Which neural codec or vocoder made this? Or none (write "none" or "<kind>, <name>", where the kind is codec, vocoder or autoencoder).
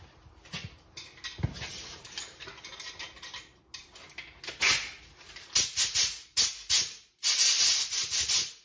none